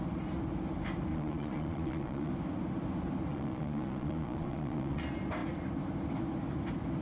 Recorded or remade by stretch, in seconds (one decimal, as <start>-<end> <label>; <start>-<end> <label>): 0.0-1.1 recorded; 1.1-2.3 remade; 2.3-3.3 recorded; 3.3-5.0 remade; 5.0-7.0 recorded